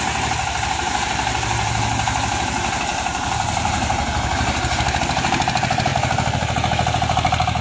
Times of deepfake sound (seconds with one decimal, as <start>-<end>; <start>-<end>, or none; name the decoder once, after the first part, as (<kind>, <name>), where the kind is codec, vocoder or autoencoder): 0.0-5.9 (vocoder, BigVGAN v2)